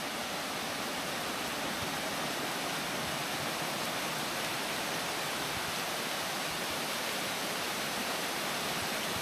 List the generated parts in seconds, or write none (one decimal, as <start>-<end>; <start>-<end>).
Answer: 0.0-9.2